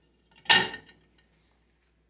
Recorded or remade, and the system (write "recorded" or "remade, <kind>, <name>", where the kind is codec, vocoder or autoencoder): recorded